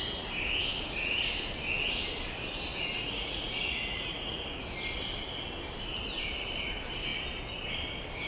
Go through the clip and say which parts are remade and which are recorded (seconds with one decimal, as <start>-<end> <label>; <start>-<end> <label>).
0.0-2.7 recorded; 2.7-4.4 remade; 4.4-8.3 recorded